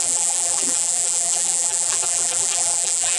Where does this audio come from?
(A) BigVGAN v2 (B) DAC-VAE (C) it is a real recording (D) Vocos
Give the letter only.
A